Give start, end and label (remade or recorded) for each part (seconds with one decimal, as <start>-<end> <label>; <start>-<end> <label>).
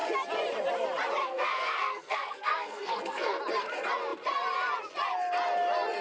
0.0-1.2 recorded; 1.2-3.4 remade; 3.4-6.0 recorded